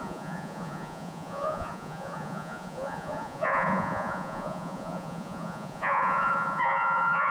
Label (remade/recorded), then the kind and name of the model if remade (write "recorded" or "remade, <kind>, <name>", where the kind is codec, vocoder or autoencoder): remade, vocoder, Vocos